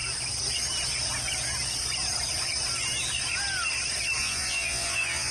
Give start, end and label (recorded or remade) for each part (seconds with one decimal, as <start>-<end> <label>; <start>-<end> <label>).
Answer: 0.0-4.2 recorded; 4.2-5.3 remade

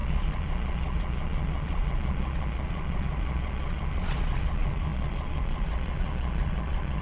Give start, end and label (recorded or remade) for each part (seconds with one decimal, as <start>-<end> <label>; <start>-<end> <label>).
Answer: 0.0-7.0 remade

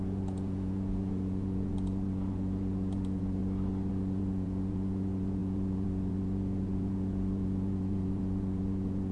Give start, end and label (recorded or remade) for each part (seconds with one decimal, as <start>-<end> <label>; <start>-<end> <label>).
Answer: 0.0-3.4 remade; 3.4-3.9 recorded; 3.9-9.1 remade

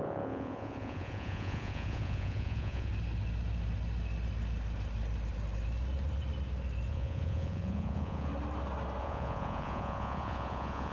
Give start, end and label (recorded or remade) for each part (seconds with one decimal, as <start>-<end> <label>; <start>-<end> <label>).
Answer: 0.0-2.9 remade; 2.9-6.9 recorded; 6.9-8.3 remade; 8.3-9.0 recorded; 9.0-10.9 remade